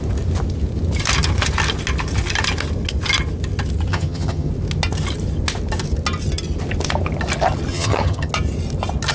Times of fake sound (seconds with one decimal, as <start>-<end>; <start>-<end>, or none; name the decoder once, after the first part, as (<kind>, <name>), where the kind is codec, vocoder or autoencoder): 3.9-4.5 (vocoder, HiFi-GAN); 7.7-8.3